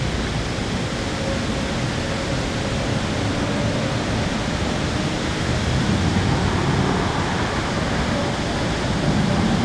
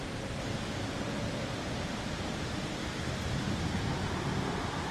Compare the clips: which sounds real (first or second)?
first